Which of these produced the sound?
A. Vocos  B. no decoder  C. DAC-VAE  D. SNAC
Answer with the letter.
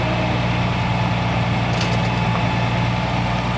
B